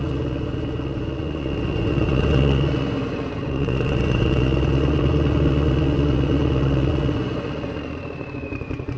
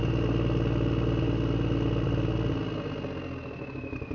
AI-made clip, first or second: first